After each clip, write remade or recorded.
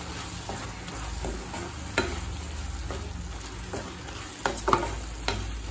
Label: recorded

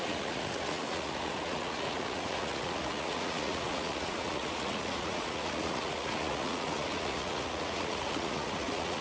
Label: remade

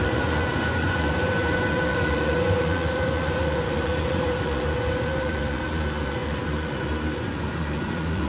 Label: remade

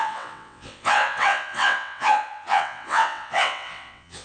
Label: remade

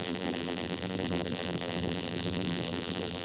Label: remade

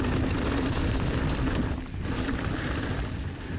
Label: recorded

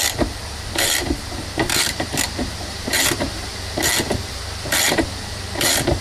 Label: remade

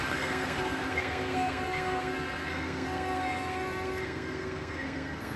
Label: remade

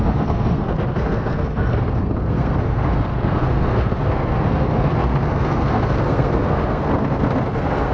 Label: remade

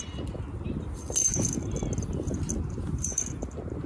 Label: recorded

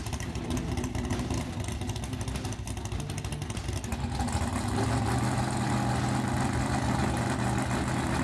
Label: recorded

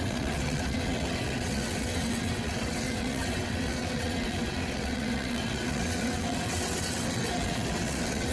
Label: remade